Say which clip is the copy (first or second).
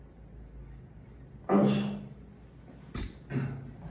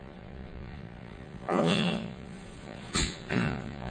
second